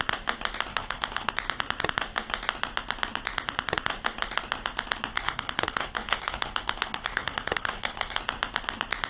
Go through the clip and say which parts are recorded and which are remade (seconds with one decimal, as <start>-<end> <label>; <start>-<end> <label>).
0.0-0.7 recorded; 0.7-1.3 remade; 1.3-5.1 recorded; 5.1-8.2 remade; 8.2-9.1 recorded